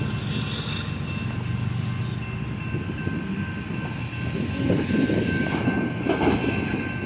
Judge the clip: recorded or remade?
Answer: recorded